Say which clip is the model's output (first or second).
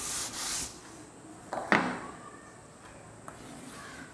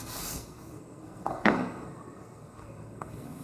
second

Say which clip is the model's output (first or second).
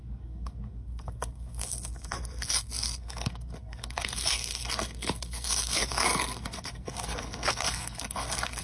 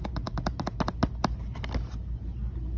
first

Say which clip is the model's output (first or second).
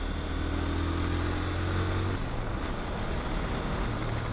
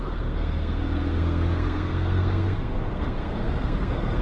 second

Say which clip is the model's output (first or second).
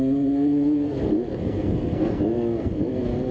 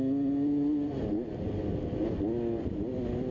first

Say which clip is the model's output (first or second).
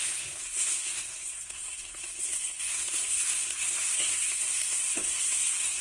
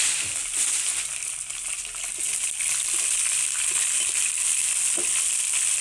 first